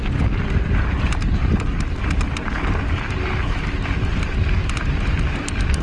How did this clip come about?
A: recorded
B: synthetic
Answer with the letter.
A